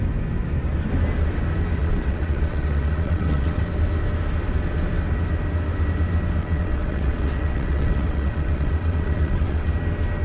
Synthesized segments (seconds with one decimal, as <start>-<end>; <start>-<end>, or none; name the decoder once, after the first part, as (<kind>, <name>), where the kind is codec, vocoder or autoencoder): 1.8-3.6 (vocoder, WaveNeXt); 6.4-9.7